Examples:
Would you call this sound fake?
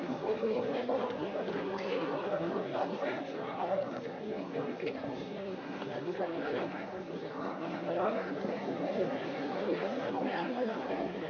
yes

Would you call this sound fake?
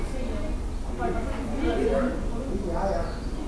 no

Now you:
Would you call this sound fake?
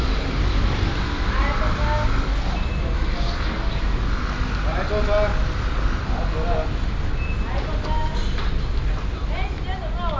no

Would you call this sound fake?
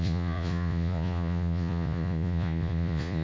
yes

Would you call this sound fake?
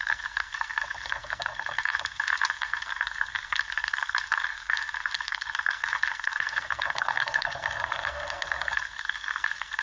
yes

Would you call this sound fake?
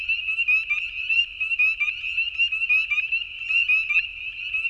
no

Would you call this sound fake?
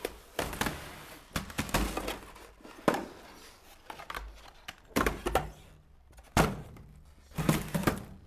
no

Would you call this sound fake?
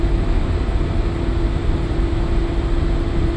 no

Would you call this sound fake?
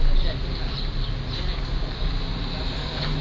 no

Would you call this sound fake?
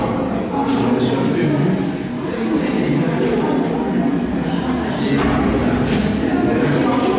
no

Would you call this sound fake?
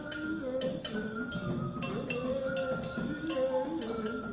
no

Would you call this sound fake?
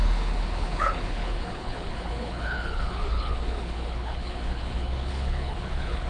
yes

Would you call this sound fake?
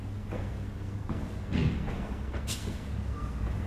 yes